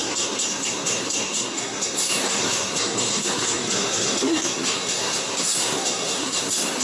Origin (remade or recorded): remade